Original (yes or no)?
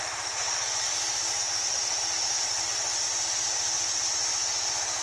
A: yes